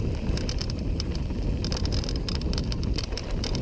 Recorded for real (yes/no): no